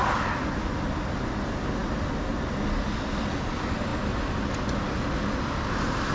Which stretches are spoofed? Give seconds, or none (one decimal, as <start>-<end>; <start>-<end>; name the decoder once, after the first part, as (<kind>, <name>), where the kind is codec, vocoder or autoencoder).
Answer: none